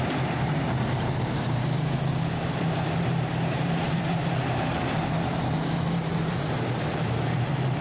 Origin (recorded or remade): remade